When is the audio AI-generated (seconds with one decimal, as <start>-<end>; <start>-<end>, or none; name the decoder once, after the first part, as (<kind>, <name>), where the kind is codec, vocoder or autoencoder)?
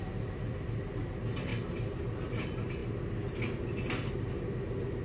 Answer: none